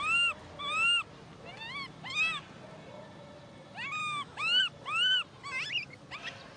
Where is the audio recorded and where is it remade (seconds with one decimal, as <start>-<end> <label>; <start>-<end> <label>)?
0.0-4.0 recorded; 4.0-4.6 remade; 4.6-6.6 recorded